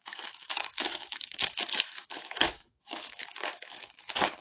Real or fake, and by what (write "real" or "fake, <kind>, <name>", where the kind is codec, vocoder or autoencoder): fake, autoencoder, DAC-VAE